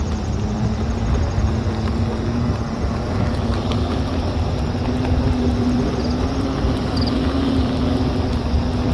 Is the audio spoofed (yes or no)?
no